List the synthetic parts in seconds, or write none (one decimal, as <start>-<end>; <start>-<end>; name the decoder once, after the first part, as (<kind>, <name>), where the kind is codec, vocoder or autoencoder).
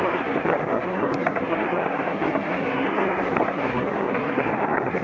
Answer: 0.0-5.0 (codec, SNAC)